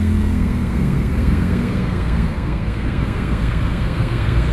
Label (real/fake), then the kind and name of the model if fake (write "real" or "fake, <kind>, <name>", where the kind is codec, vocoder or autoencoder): fake, codec, SNAC